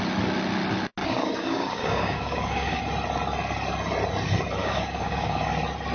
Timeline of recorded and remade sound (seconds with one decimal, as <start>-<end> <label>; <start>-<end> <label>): 0.0-1.0 recorded; 1.0-2.8 remade; 2.8-4.6 recorded; 4.6-5.5 remade; 5.5-5.9 recorded